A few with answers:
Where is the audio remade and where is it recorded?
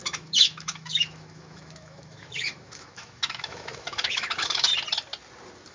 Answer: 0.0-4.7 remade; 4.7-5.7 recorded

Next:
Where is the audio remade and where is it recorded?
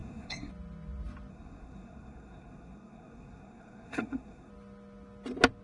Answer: 0.0-0.5 remade; 0.5-1.3 recorded; 1.3-4.5 remade; 4.5-5.6 recorded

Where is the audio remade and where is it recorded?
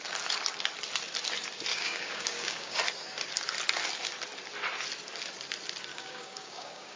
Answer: 0.0-1.7 recorded; 1.7-2.8 remade; 2.8-5.9 recorded; 5.9-7.0 remade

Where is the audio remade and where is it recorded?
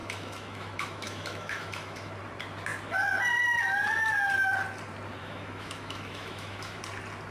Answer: 0.0-2.1 remade; 2.1-5.2 recorded; 5.2-6.8 remade; 6.8-7.3 recorded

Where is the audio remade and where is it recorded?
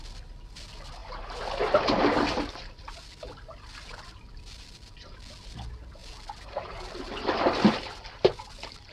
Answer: 0.0-8.9 recorded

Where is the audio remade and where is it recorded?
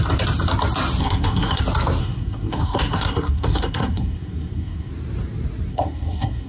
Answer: 0.0-1.0 recorded; 1.0-1.6 remade; 1.6-2.0 recorded; 2.0-4.9 remade; 4.9-5.7 recorded; 5.7-6.5 remade